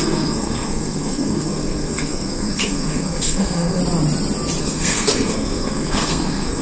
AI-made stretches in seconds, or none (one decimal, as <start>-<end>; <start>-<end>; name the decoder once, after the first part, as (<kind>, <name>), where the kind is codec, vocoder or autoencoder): 0.0-3.8 (codec, SNAC); 4.6-6.6